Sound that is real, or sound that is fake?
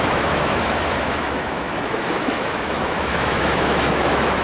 fake